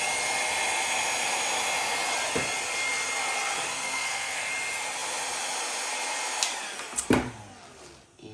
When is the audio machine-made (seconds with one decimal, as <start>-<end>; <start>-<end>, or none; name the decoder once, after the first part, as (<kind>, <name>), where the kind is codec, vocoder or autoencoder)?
3.7-4.5 (codec, SNAC)